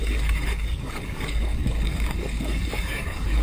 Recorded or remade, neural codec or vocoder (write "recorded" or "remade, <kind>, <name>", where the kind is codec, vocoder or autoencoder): remade, codec, DAC